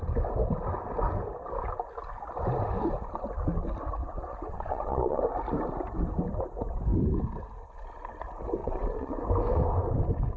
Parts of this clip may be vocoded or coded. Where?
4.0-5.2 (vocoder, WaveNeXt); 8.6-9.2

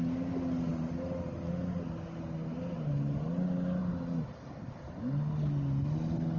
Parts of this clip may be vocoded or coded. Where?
none